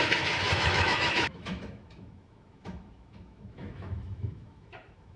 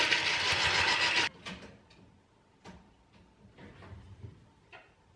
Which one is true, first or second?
second